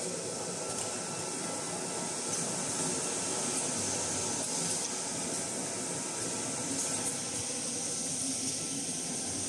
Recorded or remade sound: recorded